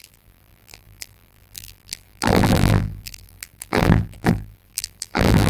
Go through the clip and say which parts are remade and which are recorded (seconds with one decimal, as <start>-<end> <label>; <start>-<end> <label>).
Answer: 0.0-5.5 remade